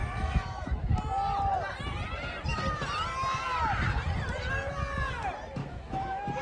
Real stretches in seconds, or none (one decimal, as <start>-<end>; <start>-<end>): 1.0-5.6